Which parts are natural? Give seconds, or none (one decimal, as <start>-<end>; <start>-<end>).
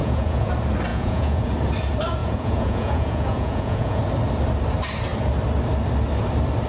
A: 0.5-0.9; 1.5-2.2; 4.0-6.7